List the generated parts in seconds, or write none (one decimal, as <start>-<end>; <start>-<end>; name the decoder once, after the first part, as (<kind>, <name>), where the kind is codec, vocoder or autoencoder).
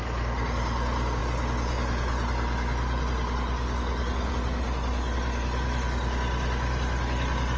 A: none